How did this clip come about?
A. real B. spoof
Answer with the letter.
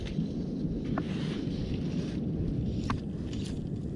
A